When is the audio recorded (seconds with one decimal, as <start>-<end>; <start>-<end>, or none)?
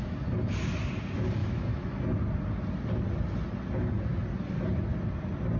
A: 0.0-1.4; 2.0-5.6